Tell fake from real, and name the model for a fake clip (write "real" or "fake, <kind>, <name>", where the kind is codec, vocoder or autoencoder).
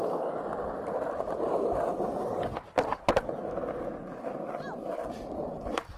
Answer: real